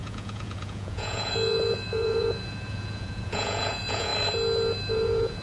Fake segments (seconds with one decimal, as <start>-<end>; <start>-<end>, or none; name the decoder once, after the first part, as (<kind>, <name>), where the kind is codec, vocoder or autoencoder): 0.0-4.1 (vocoder, Vocos); 4.9-5.4